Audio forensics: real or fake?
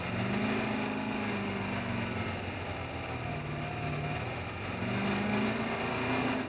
real